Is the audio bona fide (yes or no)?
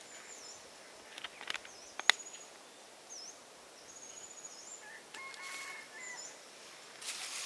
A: yes